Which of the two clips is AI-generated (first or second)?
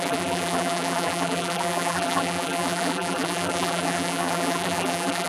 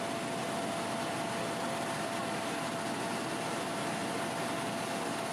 first